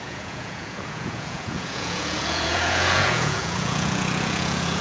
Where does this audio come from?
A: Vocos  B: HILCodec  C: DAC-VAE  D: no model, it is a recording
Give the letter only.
A